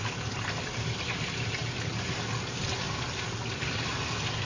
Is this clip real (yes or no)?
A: yes